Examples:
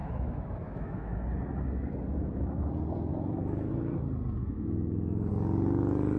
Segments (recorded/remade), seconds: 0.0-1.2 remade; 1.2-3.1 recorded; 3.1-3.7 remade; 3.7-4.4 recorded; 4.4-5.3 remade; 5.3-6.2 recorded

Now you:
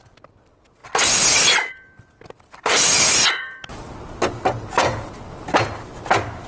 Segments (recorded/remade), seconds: 0.0-6.5 recorded

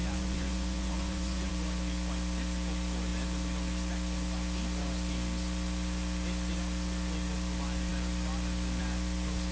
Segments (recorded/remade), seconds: 0.0-1.5 remade; 1.5-9.5 recorded

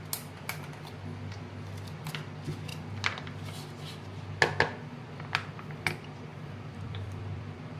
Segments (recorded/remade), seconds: 0.0-6.3 recorded; 6.3-7.8 remade

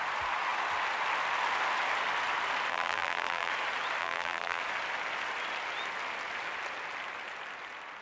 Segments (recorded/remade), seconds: 0.0-2.7 recorded; 2.7-3.5 remade; 3.5-4.0 recorded; 4.0-4.6 remade; 4.6-8.0 recorded

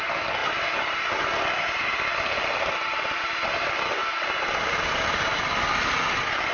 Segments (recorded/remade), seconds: 0.0-0.4 recorded; 0.4-1.1 remade; 1.1-2.1 recorded; 2.1-3.4 remade; 3.4-4.0 recorded; 4.0-4.8 remade; 4.8-6.5 recorded